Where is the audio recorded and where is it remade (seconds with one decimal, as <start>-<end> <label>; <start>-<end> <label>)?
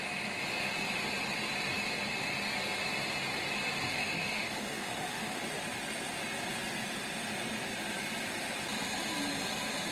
0.0-3.9 recorded; 3.9-5.4 remade; 5.4-9.9 recorded